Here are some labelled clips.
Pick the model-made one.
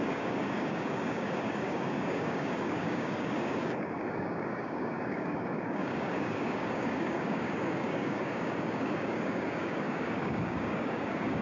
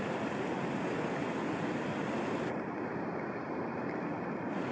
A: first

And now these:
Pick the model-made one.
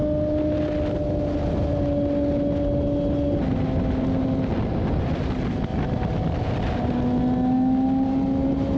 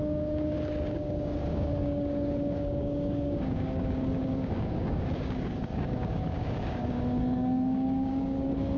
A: second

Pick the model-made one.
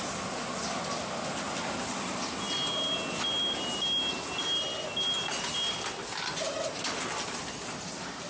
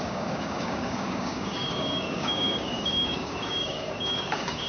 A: second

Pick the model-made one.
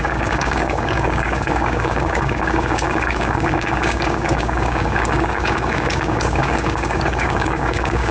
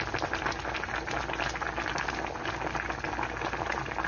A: first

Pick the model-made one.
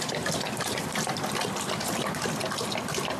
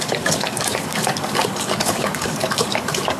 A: second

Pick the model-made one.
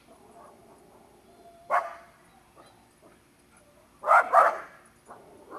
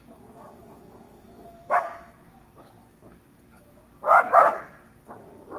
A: second